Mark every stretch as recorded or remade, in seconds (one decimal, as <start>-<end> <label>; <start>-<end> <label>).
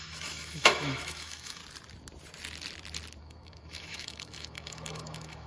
0.0-1.6 remade; 1.6-3.2 recorded; 3.2-5.5 remade